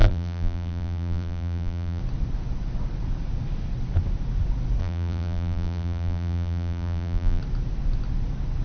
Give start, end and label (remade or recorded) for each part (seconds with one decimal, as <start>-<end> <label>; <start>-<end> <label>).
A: 0.0-2.0 remade; 2.0-4.8 recorded; 4.8-7.4 remade; 7.4-8.6 recorded